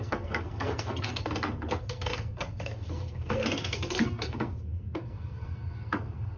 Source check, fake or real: fake